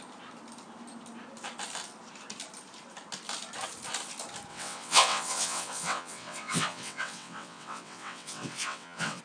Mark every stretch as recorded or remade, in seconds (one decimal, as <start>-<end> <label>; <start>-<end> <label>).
0.0-4.5 recorded; 4.5-9.2 remade